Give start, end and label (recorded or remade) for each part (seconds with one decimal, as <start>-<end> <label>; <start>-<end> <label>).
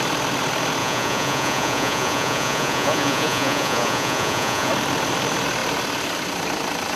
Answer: 0.0-0.8 recorded; 0.8-4.7 remade; 4.7-7.0 recorded